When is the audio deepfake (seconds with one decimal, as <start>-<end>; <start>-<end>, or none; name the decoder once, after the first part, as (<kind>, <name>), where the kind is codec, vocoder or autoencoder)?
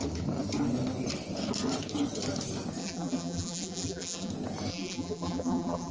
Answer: 2.8-4.3 (vocoder, BigVGAN v2); 4.7-5.9